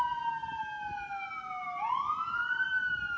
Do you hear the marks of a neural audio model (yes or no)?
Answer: no